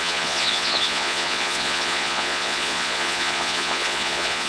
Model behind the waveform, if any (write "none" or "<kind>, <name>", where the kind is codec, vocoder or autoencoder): vocoder, Vocos